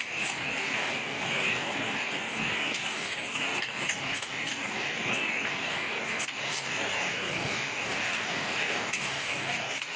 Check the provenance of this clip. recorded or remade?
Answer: remade